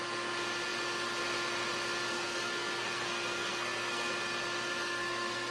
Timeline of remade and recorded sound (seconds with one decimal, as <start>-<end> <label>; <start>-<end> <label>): 0.0-2.1 recorded; 2.1-4.1 remade; 4.1-4.7 recorded; 4.7-5.5 remade